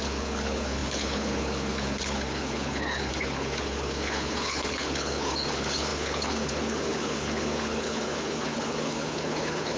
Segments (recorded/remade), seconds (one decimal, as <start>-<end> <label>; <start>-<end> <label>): 0.0-9.8 remade